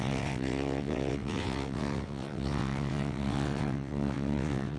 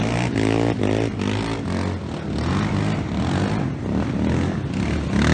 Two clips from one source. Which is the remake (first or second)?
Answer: first